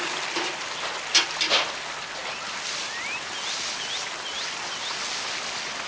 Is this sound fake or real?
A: real